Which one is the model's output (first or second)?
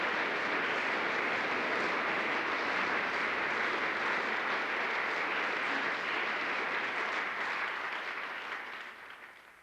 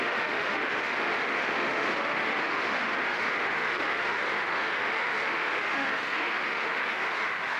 second